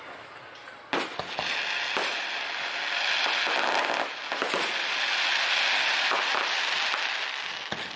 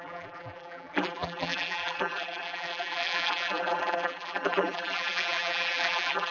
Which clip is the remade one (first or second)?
second